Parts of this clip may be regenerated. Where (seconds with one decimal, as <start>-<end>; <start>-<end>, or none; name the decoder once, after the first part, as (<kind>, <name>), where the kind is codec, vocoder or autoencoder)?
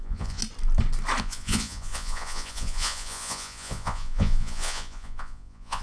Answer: 0.0-0.4 (vocoder, Vocos); 1.2-5.8